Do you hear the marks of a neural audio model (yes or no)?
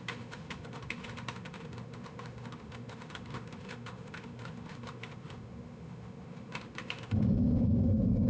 yes